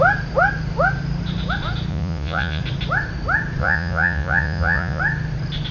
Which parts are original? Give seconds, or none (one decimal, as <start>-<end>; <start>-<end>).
0.0-1.9; 2.6-3.6; 5.0-5.7